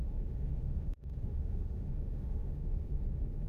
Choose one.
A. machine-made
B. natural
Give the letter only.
A